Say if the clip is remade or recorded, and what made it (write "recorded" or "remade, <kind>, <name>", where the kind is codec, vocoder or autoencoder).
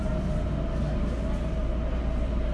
recorded